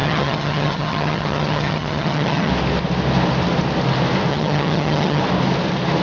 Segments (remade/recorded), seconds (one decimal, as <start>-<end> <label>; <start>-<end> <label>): 0.0-2.5 remade; 2.5-4.3 recorded; 4.3-5.2 remade; 5.2-6.0 recorded

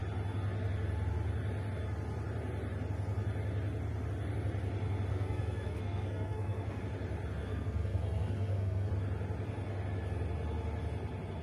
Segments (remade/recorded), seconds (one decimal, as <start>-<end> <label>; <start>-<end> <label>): 0.0-5.1 recorded; 5.1-6.8 remade; 6.8-7.4 recorded; 7.4-8.9 remade; 8.9-11.4 recorded

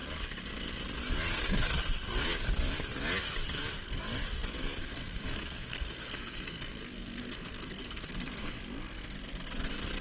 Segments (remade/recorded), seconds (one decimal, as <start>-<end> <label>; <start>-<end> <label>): 0.0-4.8 recorded; 4.8-8.5 remade; 8.5-10.0 recorded

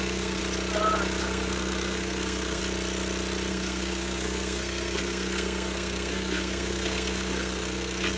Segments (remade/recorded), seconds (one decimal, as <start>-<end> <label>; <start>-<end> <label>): 0.0-0.4 remade; 0.4-1.2 recorded; 1.2-2.6 remade; 2.6-3.5 recorded; 3.5-8.2 remade

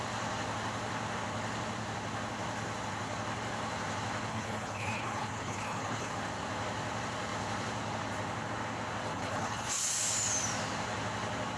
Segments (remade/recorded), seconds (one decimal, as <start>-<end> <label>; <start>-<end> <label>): 0.0-4.3 recorded; 4.3-6.1 remade; 6.1-9.1 recorded; 9.1-9.8 remade; 9.8-11.6 recorded

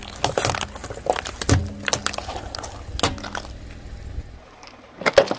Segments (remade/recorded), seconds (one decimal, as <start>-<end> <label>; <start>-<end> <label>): 0.0-5.4 recorded